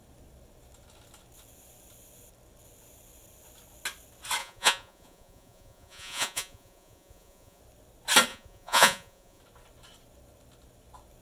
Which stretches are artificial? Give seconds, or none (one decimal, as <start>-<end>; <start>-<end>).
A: 4.4-7.6; 8.3-9.4